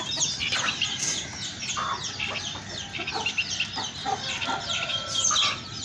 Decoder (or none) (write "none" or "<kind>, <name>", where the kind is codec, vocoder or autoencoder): none